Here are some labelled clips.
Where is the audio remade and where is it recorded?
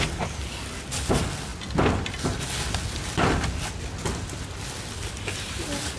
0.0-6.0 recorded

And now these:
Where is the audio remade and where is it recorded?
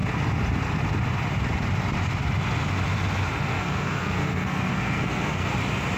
0.0-3.5 recorded; 3.5-5.5 remade; 5.5-6.0 recorded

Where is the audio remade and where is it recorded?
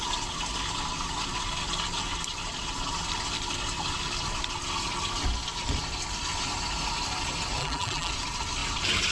0.0-7.6 recorded; 7.6-8.1 remade; 8.1-9.1 recorded